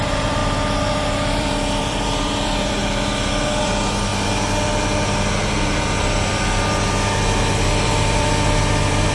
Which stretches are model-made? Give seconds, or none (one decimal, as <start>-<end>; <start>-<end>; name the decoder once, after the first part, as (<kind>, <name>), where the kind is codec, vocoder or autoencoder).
0.0-2.8 (vocoder, BigVGAN v2); 3.6-4.1; 7.4-9.1